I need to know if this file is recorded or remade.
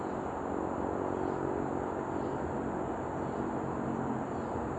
recorded